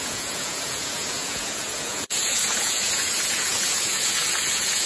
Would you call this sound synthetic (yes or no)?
yes